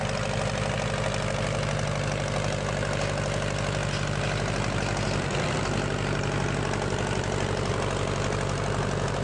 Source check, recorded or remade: recorded